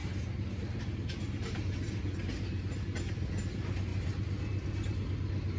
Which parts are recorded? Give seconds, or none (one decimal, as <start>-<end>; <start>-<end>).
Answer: 0.0-5.6